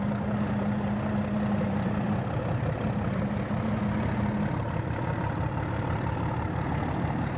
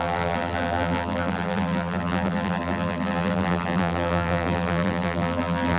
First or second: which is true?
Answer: first